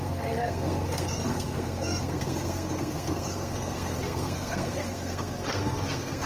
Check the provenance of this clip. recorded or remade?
remade